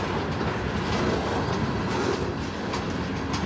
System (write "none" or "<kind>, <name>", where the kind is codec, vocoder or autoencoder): none